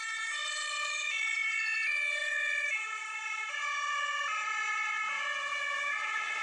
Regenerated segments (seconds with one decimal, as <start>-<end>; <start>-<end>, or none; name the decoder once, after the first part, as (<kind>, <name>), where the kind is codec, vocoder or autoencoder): 0.4-1.6 (vocoder, BigVGAN v2); 2.2-3.5